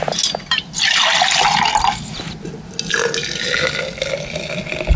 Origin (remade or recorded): recorded